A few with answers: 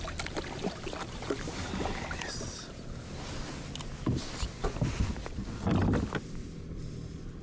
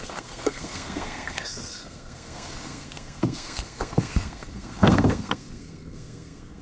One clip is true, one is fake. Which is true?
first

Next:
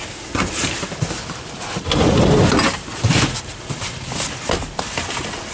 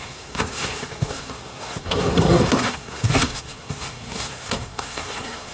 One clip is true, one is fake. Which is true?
first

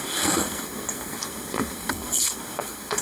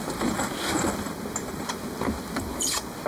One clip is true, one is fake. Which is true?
second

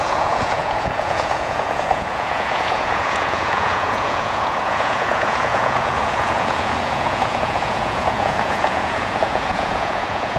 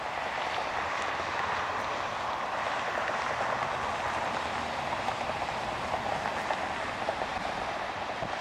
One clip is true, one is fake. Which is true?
second